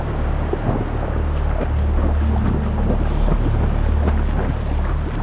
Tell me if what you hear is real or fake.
real